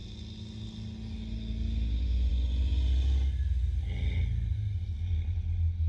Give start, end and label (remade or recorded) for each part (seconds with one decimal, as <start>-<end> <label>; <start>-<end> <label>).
0.0-5.9 recorded